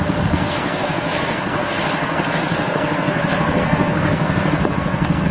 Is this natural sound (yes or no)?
no